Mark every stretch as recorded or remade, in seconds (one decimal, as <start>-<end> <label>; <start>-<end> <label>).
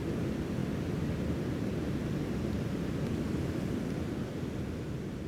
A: 0.0-5.3 recorded